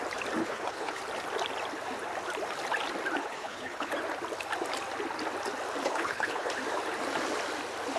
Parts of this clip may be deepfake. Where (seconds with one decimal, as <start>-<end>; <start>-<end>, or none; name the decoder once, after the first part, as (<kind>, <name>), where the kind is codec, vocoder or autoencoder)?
0.4-1.0 (codec, HILCodec); 3.2-3.9; 5.8-6.5